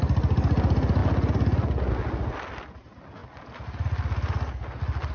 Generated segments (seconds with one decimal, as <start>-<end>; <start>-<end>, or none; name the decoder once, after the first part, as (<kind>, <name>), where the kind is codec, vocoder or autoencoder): none

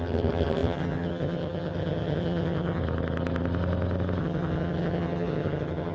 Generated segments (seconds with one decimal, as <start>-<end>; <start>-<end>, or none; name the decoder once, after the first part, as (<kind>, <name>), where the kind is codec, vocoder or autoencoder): 0.0-2.8 (vocoder, HiFi-GAN); 4.2-5.9